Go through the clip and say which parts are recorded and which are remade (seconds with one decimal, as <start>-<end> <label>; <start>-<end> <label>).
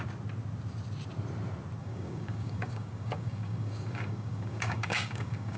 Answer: 0.0-1.8 recorded; 1.8-5.6 remade